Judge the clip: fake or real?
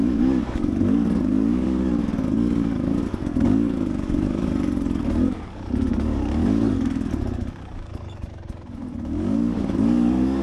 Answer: fake